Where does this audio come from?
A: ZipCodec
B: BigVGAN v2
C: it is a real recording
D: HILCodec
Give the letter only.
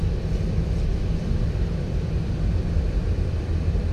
B